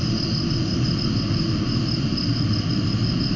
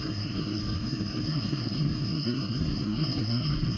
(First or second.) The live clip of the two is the first